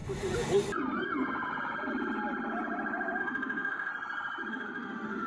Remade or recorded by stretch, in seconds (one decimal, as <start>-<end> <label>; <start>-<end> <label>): 0.0-3.2 recorded; 3.2-3.9 remade; 3.9-4.5 recorded; 4.5-5.3 remade

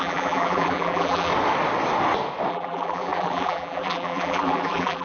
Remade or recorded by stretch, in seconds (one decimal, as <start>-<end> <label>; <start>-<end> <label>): 0.0-1.3 remade; 1.3-2.5 recorded; 2.5-5.0 remade

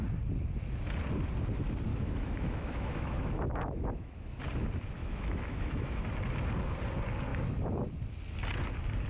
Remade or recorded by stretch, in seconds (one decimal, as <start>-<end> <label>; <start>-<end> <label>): 0.0-1.9 recorded; 1.9-4.4 remade; 4.4-5.0 recorded; 5.0-6.0 remade; 6.0-9.1 recorded

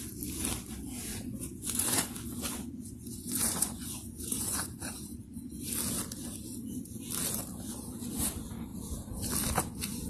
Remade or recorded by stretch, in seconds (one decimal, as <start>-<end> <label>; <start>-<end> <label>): 0.0-1.1 recorded; 1.1-5.7 remade; 5.7-10.1 recorded

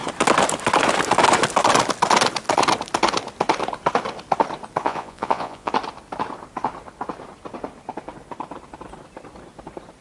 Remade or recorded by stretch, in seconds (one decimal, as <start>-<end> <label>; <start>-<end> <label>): 0.0-4.8 recorded; 4.8-5.7 remade; 5.7-10.0 recorded

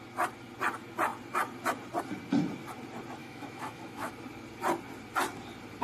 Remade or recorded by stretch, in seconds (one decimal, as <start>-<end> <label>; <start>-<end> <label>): 0.0-3.2 recorded; 3.2-4.1 remade; 4.1-5.8 recorded